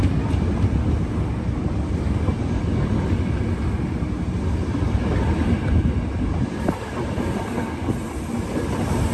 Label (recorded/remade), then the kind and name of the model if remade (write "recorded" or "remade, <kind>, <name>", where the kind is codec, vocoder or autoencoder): recorded